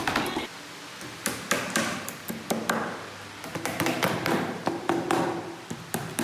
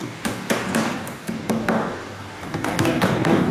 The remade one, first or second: second